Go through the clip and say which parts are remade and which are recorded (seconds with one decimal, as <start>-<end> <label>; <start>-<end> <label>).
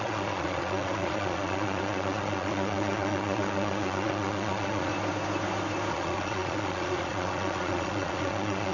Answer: 0.0-4.9 remade; 4.9-5.9 recorded; 5.9-8.7 remade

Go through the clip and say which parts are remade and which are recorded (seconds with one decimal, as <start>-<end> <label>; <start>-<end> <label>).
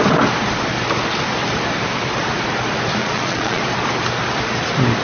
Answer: 0.0-3.0 recorded; 3.0-3.6 remade; 3.6-5.0 recorded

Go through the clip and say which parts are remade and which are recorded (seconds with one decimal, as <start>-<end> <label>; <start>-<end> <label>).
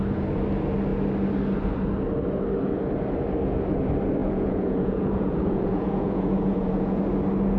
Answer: 0.0-4.2 recorded; 4.2-7.0 remade; 7.0-7.6 recorded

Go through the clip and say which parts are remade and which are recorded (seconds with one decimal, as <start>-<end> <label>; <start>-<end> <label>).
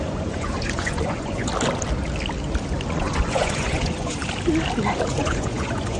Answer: 0.0-1.5 remade; 1.5-2.9 recorded; 2.9-4.2 remade; 4.2-5.1 recorded; 5.1-6.0 remade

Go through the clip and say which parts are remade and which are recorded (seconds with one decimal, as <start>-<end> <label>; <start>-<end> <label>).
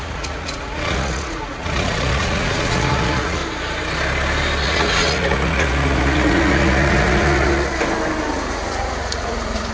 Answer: 0.0-3.4 remade; 3.4-4.6 recorded; 4.6-7.7 remade; 7.7-8.3 recorded; 8.3-9.7 remade